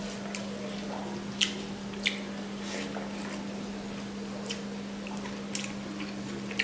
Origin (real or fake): real